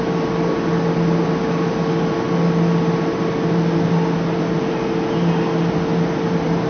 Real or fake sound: real